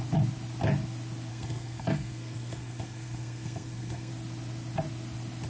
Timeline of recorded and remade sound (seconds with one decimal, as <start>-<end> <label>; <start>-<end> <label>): 0.0-1.3 recorded; 1.3-4.1 remade; 4.1-5.5 recorded